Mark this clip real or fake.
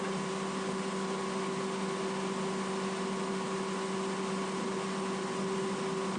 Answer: real